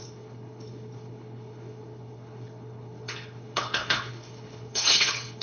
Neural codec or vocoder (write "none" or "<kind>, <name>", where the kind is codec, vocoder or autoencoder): codec, HILCodec